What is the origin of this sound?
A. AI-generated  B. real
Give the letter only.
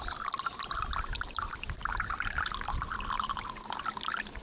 B